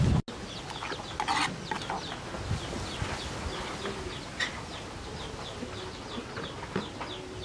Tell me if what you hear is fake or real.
real